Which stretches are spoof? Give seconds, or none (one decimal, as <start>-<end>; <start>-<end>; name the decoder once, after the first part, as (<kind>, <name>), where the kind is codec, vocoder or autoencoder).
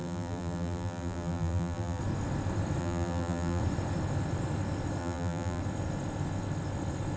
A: 0.0-2.0 (vocoder, BigVGAN v2); 2.8-3.6; 5.0-5.6